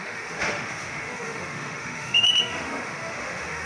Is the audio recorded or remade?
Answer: remade